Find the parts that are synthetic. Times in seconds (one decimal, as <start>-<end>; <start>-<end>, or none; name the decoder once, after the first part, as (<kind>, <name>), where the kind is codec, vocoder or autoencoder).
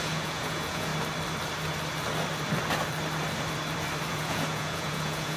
0.0-0.9 (vocoder, Vocos); 4.1-5.4